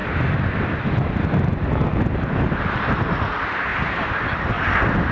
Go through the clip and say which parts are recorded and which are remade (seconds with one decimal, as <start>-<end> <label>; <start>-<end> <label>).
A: 0.0-5.1 recorded